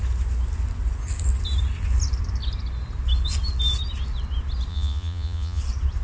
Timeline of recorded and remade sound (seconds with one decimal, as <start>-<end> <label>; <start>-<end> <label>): 0.0-4.7 recorded; 4.7-5.6 remade; 5.6-6.0 recorded